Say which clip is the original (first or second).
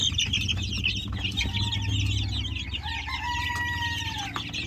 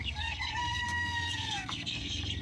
first